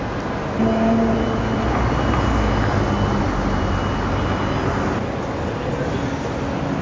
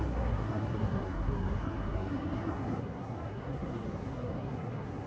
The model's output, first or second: second